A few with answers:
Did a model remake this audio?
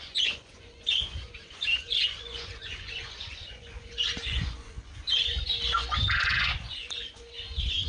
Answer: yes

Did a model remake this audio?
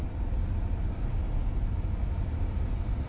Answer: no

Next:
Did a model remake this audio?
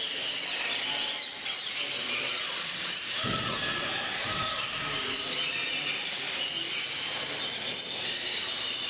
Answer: no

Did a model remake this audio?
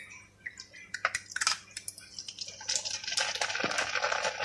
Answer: no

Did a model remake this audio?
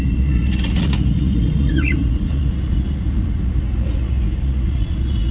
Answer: yes